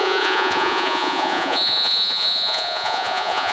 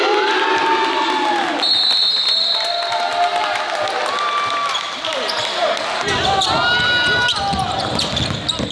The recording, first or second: second